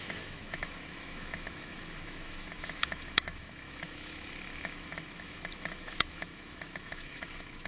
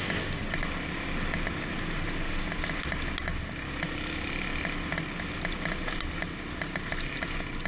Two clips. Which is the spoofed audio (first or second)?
first